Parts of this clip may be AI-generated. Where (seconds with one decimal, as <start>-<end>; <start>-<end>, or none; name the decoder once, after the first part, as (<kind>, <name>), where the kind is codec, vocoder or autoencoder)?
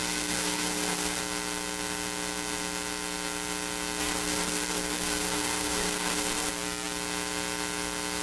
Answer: 0.0-1.2 (codec, SNAC); 4.0-6.5